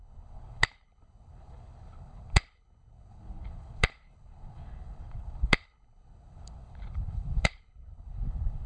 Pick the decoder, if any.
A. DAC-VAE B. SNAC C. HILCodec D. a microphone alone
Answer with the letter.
C